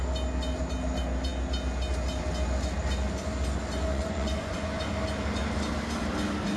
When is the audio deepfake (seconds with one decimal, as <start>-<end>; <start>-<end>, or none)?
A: 3.9-4.8